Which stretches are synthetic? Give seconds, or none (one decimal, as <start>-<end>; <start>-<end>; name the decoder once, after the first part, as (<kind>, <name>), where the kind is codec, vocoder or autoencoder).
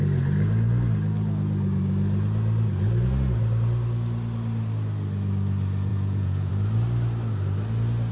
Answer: 5.9-6.5 (vocoder, Vocos)